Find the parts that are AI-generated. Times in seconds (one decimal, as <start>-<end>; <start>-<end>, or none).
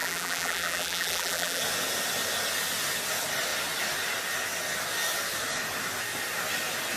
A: 0.0-1.6